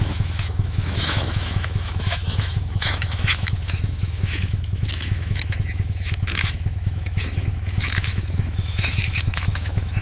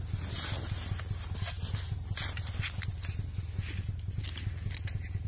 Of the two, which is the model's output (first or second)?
first